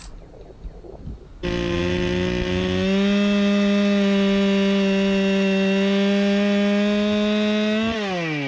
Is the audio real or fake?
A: real